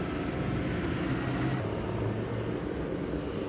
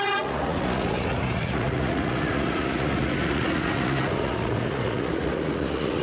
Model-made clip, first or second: second